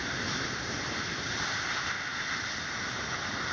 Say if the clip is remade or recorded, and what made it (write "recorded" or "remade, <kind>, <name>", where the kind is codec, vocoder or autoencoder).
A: recorded